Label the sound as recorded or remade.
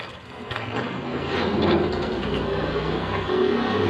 remade